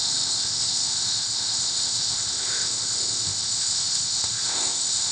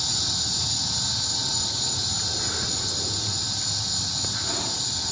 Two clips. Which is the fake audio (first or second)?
first